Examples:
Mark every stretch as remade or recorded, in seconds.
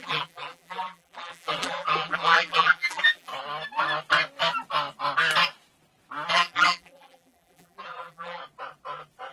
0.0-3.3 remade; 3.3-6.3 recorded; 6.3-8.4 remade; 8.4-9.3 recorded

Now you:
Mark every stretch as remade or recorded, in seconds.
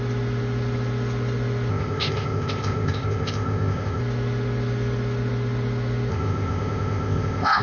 0.0-1.7 recorded; 1.7-4.0 remade; 4.0-6.1 recorded; 6.1-7.6 remade